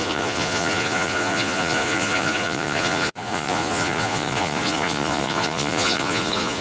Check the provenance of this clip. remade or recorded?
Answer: remade